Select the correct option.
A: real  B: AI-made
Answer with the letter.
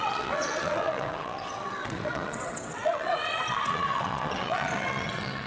B